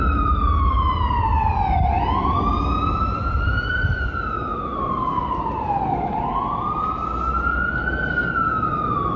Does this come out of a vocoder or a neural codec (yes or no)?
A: no